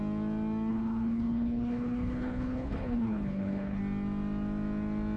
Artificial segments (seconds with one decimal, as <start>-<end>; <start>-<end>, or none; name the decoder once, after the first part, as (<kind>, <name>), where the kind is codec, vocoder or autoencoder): 0.7-3.8 (codec, HILCodec)